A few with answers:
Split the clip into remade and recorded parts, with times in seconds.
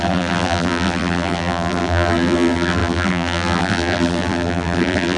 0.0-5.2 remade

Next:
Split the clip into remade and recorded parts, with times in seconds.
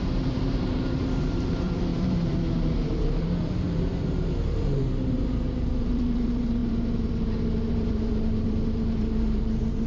0.0-9.9 remade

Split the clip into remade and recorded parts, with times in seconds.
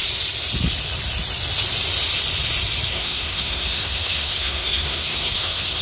0.0-2.9 recorded; 2.9-5.8 remade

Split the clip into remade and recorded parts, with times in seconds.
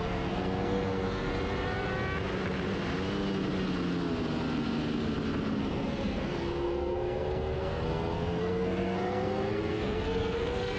0.0-1.3 remade; 1.3-5.6 recorded; 5.6-10.8 remade